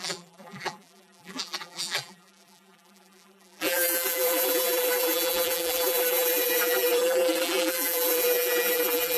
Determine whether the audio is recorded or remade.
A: remade